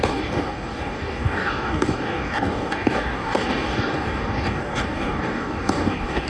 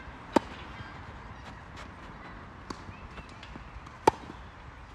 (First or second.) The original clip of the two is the second